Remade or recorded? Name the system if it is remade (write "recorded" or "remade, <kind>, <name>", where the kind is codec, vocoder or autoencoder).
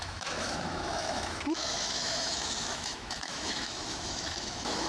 remade, autoencoder, DAC-VAE